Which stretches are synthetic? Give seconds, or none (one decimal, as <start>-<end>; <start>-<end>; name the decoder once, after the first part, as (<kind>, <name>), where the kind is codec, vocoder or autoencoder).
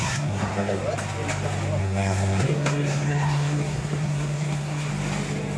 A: 0.0-0.8 (codec, SNAC); 1.8-4.9